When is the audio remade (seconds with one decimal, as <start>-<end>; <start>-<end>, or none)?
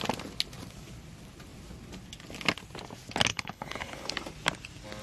3.3-4.1